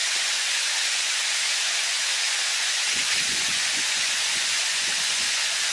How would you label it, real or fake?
fake